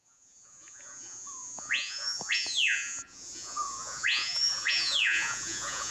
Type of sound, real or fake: fake